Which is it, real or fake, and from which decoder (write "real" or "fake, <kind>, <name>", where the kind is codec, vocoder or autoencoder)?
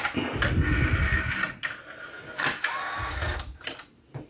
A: real